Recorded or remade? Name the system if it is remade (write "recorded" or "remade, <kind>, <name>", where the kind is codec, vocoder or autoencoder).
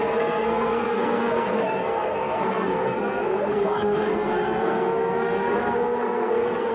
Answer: remade, codec, SNAC